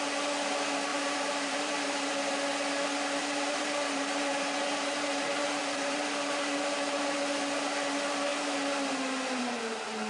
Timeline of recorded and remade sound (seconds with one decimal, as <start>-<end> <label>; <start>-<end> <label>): 0.0-0.9 recorded; 0.9-2.1 remade; 2.1-3.2 recorded; 3.2-7.2 remade; 7.2-10.1 recorded